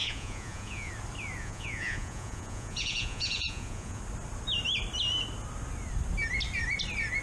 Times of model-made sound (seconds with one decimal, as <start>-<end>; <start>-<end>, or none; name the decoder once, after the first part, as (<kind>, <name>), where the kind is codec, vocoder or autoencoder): 0.0-0.9 (vocoder, Vocos); 1.4-4.0